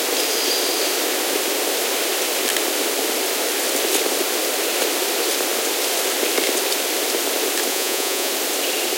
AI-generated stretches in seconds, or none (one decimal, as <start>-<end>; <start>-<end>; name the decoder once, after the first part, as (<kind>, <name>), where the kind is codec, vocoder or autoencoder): 7.7-8.3 (vocoder, Vocos)